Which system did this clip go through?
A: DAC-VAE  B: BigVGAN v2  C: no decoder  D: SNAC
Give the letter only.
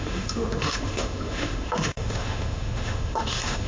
A